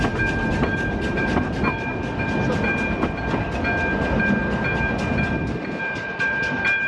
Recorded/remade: recorded